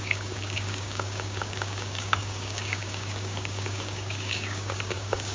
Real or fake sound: fake